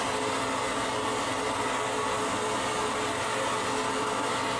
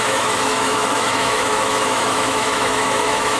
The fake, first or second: second